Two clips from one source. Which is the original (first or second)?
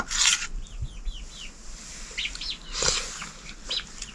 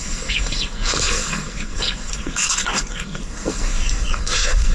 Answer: first